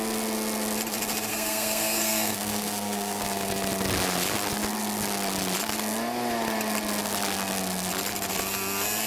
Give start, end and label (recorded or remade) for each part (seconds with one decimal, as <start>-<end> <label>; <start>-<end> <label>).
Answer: 0.0-1.3 recorded; 1.3-3.2 remade; 3.2-9.1 recorded